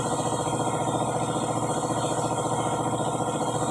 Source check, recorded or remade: recorded